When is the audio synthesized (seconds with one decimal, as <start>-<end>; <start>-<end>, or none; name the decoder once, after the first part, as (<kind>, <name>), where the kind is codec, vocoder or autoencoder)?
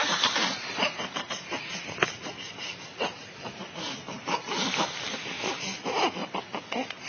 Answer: 0.4-4.5 (vocoder, BigVGAN v2); 6.2-7.1